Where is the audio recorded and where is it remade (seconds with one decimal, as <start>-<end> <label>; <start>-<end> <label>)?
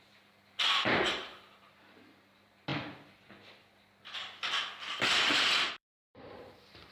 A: 0.0-2.7 remade; 2.7-5.7 recorded; 5.7-6.9 remade